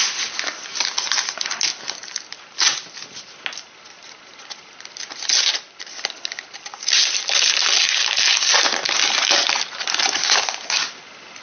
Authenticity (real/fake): real